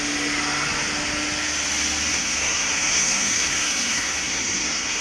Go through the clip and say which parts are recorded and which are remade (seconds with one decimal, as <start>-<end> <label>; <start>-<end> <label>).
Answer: 0.0-2.1 recorded; 2.1-5.0 remade